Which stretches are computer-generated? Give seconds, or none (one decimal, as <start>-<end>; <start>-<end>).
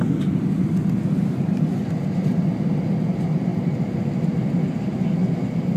none